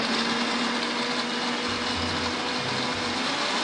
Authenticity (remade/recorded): recorded